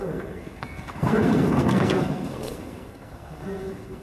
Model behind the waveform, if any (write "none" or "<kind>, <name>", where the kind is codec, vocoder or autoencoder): codec, SNAC